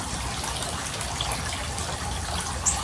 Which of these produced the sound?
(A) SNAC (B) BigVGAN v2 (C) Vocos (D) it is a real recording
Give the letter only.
D